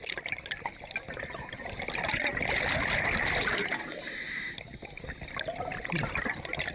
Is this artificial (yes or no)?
no